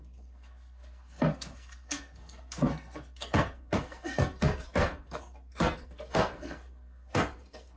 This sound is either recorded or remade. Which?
remade